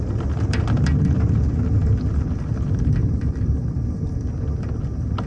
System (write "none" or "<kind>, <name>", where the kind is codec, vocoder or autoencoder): none